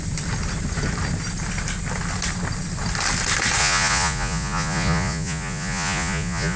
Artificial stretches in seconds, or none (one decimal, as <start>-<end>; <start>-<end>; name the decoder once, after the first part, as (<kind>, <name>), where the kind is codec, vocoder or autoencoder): 3.6-6.6 (vocoder, Vocos)